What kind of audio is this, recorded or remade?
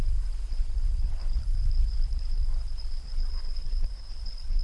remade